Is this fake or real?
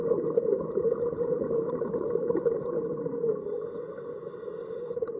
real